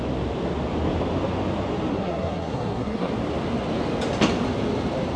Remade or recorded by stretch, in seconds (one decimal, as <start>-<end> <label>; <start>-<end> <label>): 0.0-1.9 recorded; 1.9-3.1 remade; 3.1-5.2 recorded